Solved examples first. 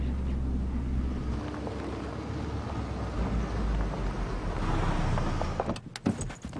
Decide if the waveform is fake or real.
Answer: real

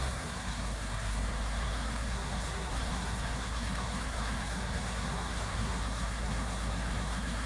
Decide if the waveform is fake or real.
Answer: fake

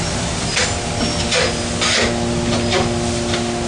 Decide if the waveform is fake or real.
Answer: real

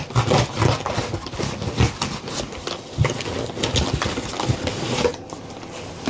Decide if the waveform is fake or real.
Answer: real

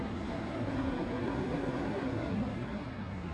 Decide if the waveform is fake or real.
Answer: fake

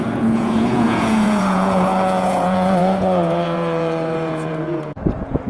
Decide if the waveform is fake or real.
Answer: fake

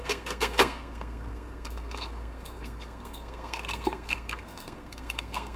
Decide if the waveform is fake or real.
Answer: fake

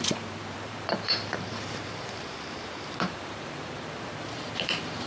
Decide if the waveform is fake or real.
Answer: fake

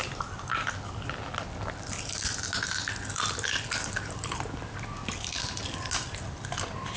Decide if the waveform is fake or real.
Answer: real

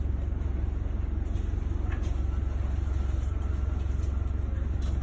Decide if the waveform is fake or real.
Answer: real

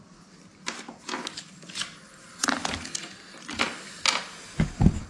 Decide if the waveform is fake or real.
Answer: real